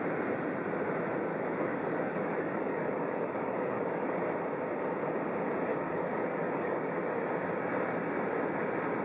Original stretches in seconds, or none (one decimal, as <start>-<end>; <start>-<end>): 0.0-1.3; 4.2-5.7; 6.9-9.0